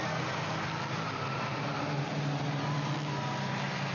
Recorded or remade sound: recorded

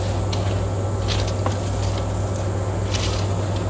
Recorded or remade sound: recorded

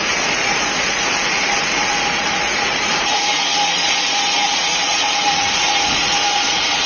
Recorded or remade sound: remade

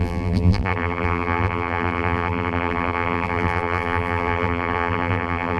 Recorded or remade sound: remade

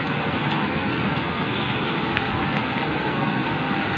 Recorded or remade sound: remade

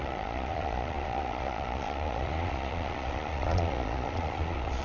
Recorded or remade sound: remade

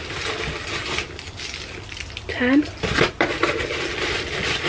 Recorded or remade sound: recorded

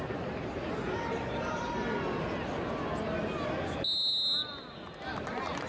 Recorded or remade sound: recorded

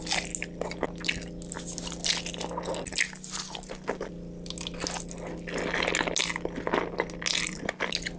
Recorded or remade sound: recorded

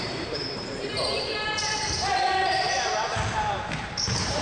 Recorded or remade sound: remade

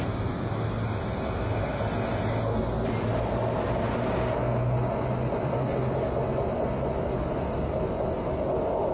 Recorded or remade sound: recorded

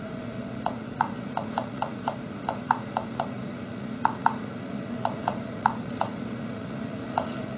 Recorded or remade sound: remade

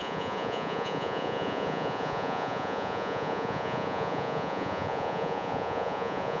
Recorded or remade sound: remade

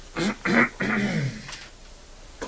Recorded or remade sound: recorded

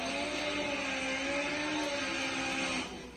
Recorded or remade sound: recorded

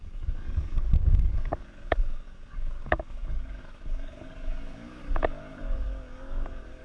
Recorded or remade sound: remade